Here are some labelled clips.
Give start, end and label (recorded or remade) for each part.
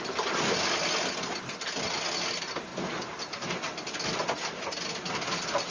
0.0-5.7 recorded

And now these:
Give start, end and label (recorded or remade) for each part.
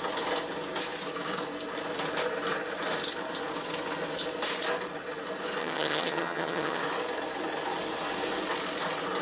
0.0-5.6 recorded; 5.6-6.8 remade; 6.8-9.2 recorded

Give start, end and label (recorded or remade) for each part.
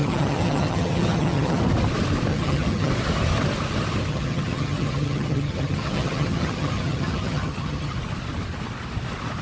0.0-1.6 remade; 1.6-2.3 recorded; 2.3-2.9 remade; 2.9-4.1 recorded; 4.1-8.0 remade; 8.0-9.4 recorded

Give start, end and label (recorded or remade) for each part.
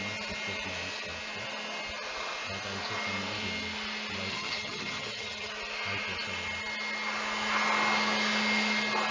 0.0-4.3 recorded; 4.3-5.5 remade; 5.5-9.1 recorded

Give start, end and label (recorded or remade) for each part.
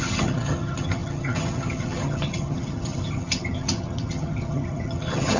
0.0-5.4 remade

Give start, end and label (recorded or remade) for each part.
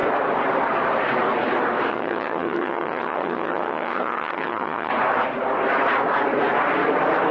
0.0-1.9 recorded; 1.9-4.9 remade; 4.9-7.3 recorded